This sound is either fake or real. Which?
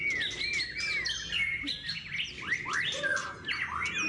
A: real